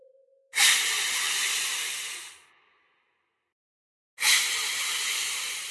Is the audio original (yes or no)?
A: yes